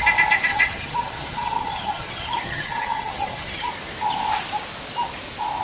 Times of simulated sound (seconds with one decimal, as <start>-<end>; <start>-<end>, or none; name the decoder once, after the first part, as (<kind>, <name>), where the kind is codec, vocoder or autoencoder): 0.5-3.7 (vocoder, HiFi-GAN)